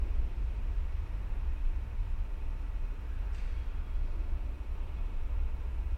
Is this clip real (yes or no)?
no